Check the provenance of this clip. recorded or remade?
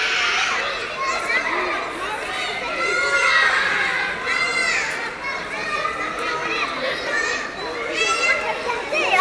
recorded